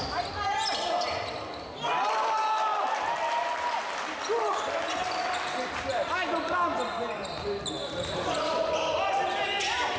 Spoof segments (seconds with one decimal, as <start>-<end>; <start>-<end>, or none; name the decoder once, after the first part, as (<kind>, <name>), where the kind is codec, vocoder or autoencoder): none